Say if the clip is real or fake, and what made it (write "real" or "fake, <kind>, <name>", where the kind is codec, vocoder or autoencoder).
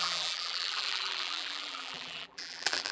fake, vocoder, BigVGAN v2